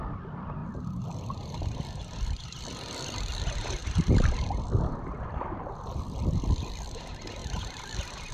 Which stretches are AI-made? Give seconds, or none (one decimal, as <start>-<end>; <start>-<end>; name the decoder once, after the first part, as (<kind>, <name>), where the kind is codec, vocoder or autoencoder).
7.4-8.3 (vocoder, BigVGAN v2)